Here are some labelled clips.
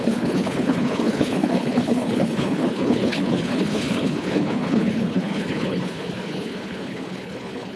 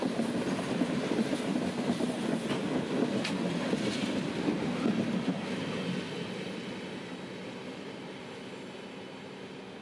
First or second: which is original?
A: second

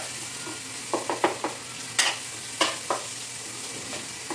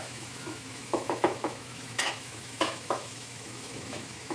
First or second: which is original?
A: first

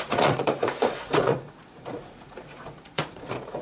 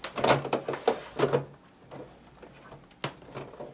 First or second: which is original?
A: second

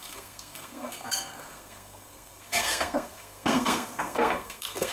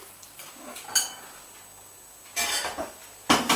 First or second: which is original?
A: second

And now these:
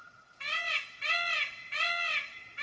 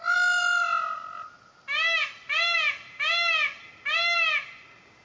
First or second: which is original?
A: second